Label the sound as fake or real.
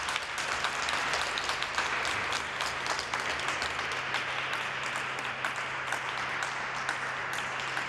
real